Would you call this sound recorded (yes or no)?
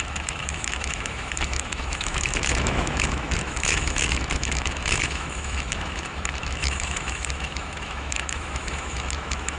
no